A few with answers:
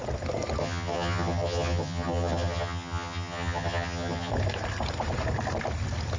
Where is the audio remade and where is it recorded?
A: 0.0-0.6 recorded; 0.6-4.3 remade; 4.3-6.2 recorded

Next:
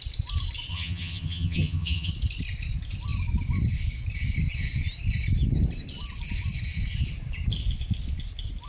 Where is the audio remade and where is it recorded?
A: 0.0-0.7 recorded; 0.7-2.1 remade; 2.1-8.7 recorded

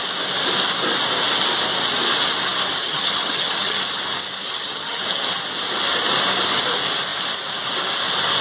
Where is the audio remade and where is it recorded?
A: 0.0-2.8 recorded; 2.8-3.8 remade; 3.8-4.4 recorded; 4.4-5.0 remade; 5.0-8.4 recorded

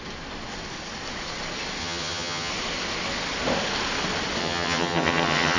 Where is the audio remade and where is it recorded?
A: 0.0-1.8 recorded; 1.8-2.5 remade; 2.5-4.4 recorded; 4.4-5.6 remade

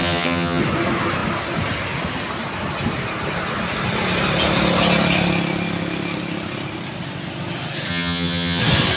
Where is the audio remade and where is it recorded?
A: 0.0-0.6 remade; 0.6-7.9 recorded; 7.9-8.6 remade; 8.6-9.0 recorded

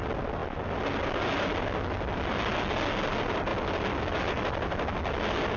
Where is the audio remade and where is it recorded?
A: 0.0-5.6 recorded

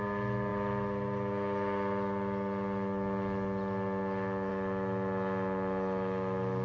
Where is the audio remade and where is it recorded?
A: 0.0-6.6 recorded

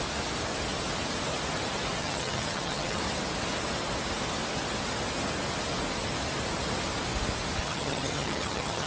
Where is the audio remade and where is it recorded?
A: 0.0-2.0 recorded; 2.0-3.0 remade; 3.0-7.6 recorded; 7.6-8.9 remade